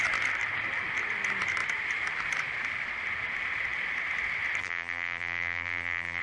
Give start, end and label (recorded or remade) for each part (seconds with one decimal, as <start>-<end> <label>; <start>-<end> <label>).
0.0-4.6 recorded; 4.6-6.2 remade